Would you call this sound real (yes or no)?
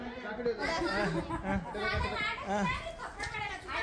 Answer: yes